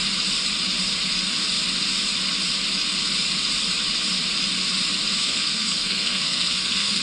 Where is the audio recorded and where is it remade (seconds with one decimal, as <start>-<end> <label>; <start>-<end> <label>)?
0.0-5.2 recorded; 5.2-7.0 remade